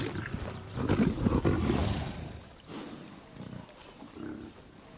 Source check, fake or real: real